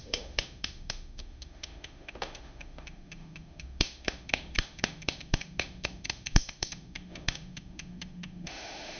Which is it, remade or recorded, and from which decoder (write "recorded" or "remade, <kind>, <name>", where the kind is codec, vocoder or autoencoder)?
remade, autoencoder, DAC-VAE